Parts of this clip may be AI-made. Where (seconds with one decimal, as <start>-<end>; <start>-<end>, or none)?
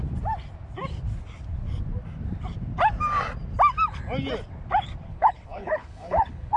5.1-6.6